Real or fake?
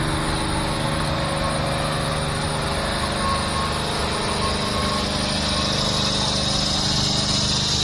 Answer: real